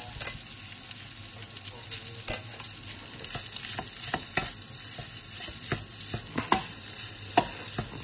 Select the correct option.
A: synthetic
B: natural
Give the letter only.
B